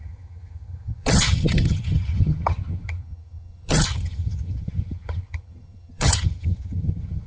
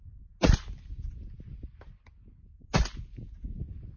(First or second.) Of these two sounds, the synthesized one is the first